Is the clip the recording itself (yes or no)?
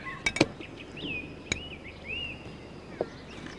yes